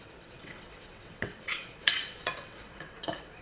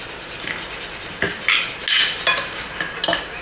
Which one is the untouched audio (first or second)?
second